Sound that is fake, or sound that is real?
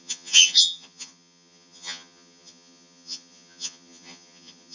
fake